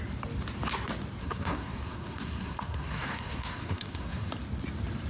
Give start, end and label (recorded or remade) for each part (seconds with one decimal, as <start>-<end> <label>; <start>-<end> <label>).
0.0-1.2 recorded; 1.2-4.3 remade; 4.3-5.1 recorded